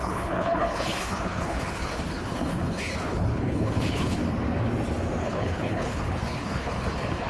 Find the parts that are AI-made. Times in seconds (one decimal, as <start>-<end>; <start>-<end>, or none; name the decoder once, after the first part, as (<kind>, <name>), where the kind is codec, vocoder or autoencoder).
0.0-4.2 (codec, HILCodec); 5.2-7.3